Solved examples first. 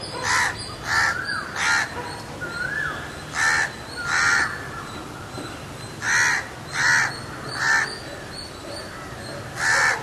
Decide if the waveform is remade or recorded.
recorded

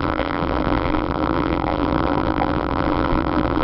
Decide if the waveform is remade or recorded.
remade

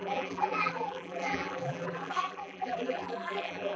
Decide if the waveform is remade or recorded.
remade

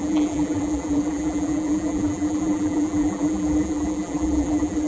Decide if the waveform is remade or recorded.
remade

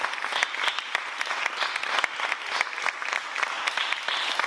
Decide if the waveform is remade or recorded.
recorded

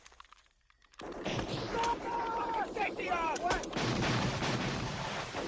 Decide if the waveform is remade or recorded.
remade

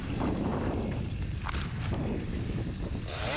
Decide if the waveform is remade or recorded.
remade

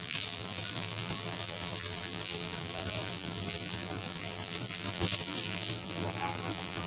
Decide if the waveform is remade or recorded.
remade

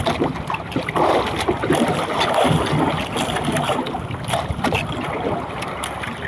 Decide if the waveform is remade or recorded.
recorded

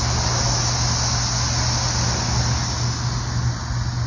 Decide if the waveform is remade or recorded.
recorded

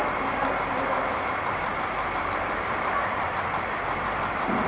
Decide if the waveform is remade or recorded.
recorded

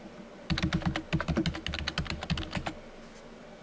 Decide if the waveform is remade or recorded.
recorded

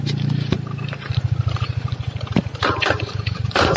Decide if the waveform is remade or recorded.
remade